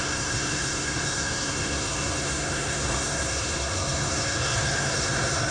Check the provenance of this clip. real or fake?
fake